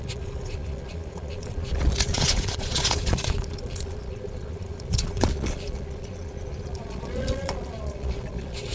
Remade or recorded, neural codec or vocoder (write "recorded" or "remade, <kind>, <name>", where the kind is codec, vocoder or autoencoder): remade, vocoder, Vocos